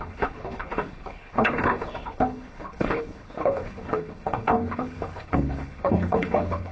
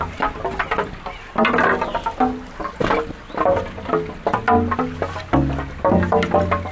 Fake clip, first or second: first